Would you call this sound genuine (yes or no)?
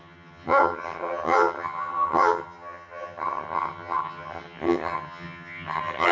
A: no